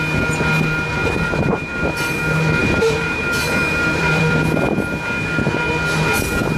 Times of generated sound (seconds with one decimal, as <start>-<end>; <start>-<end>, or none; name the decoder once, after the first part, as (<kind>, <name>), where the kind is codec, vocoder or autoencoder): 0.9-2.2 (vocoder, BigVGAN v2); 2.6-4.2